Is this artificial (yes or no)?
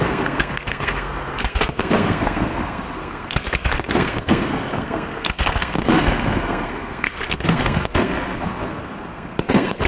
yes